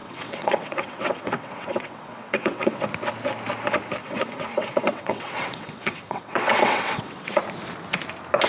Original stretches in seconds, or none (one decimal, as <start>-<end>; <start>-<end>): 2.8-4.0; 7.4-8.5

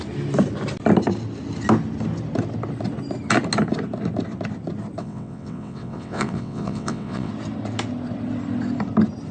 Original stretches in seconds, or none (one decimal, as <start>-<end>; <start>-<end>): 0.0-5.0; 7.3-9.3

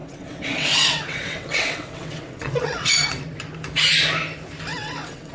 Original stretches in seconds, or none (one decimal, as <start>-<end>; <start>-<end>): 3.2-4.7

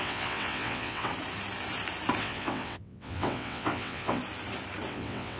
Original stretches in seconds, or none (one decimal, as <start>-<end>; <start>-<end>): 1.1-2.2; 4.2-4.9